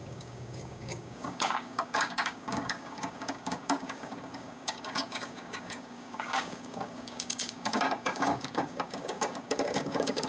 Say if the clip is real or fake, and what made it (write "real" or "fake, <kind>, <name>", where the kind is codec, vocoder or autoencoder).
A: fake, codec, DAC